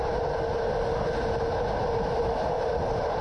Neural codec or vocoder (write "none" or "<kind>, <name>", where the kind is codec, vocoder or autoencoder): none